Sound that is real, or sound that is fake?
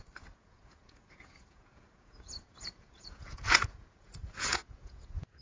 fake